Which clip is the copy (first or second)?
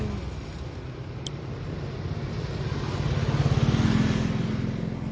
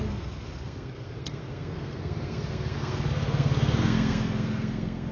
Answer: second